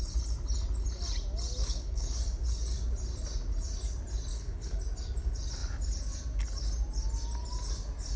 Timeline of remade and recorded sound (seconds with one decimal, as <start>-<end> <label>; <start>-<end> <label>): 0.0-1.6 recorded; 1.6-2.2 remade; 2.2-4.3 recorded; 4.3-4.8 remade; 4.8-8.2 recorded